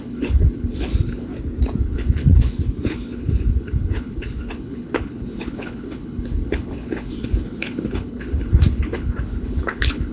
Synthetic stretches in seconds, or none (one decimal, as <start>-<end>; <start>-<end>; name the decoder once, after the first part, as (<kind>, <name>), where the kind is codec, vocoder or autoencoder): 0.0-1.3 (codec, HILCodec); 1.8-10.1